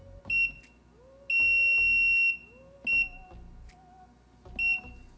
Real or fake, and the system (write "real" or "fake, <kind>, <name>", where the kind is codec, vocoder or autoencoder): real